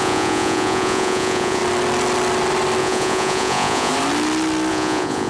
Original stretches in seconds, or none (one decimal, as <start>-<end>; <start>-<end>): 1.6-2.8; 3.9-4.7